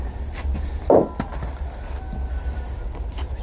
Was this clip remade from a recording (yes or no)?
no